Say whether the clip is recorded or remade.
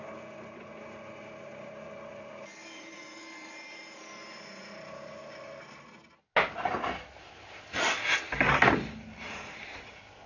recorded